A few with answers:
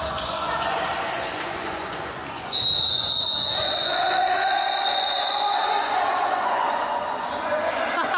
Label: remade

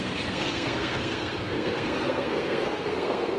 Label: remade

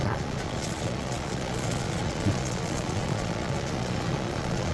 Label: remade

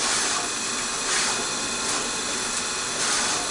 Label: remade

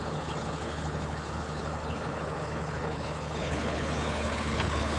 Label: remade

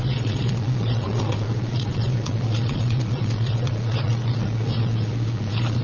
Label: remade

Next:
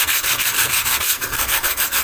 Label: remade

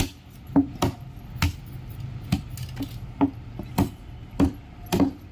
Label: recorded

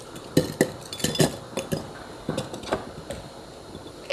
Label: recorded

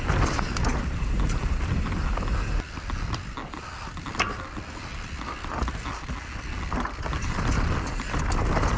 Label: recorded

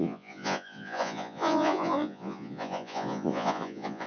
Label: remade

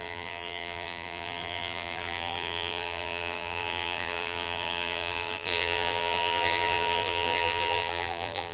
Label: remade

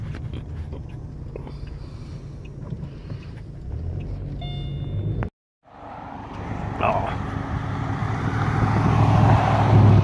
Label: recorded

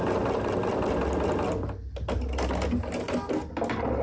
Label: recorded